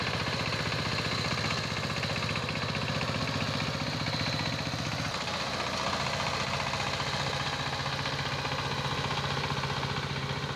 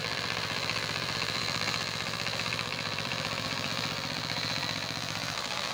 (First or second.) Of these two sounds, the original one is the first